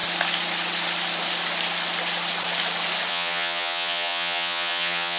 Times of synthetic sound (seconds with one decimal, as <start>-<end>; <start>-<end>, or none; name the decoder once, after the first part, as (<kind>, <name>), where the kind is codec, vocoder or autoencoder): 3.1-5.2 (vocoder, HiFi-GAN)